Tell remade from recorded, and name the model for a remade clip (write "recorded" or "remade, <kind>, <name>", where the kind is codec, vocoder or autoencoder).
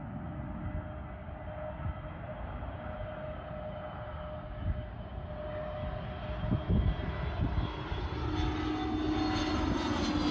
recorded